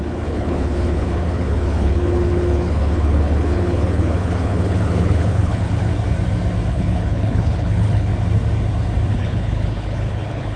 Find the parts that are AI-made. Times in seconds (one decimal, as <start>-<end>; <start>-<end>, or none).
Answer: 0.0-5.9; 6.7-8.1; 9.1-10.6